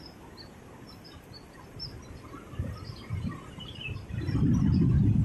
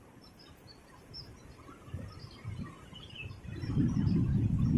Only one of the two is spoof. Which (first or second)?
second